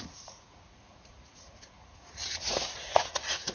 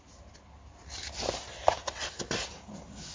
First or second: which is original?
second